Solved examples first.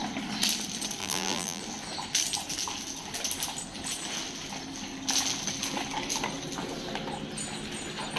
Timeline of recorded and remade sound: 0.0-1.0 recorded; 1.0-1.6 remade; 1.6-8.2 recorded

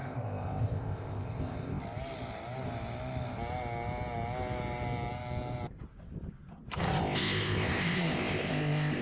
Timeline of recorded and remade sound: 0.0-1.8 remade; 1.8-7.0 recorded; 7.0-9.0 remade

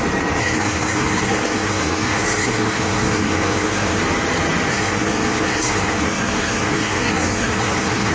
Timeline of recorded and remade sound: 0.0-0.4 recorded; 0.4-4.0 remade; 4.0-4.7 recorded; 4.7-8.1 remade

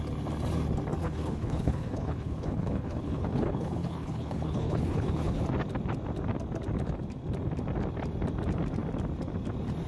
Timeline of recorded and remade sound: 0.0-1.0 recorded; 1.0-5.4 remade; 5.4-9.9 recorded

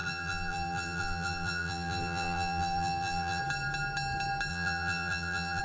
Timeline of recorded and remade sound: 0.0-3.4 remade; 3.4-4.5 recorded; 4.5-5.6 remade